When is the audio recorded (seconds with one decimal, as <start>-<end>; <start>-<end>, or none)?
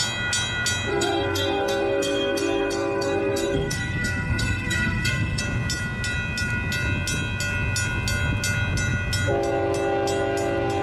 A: 0.0-0.9; 5.4-10.8